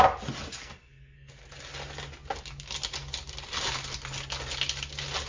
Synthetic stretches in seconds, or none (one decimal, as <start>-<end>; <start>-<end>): 0.6-1.3

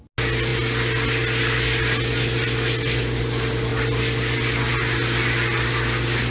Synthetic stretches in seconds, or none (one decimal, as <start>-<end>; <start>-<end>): none

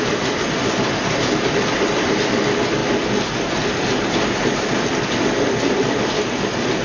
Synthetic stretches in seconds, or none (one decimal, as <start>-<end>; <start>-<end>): none

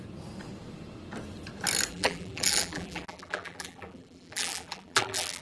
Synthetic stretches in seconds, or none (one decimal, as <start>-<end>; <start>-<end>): 1.9-5.4

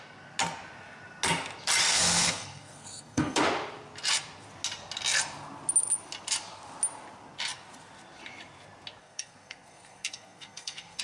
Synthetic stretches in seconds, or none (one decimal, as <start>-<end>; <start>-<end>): 1.9-3.4; 9.0-11.0

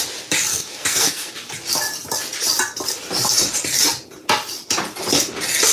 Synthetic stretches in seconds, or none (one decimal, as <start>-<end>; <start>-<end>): 0.5-1.3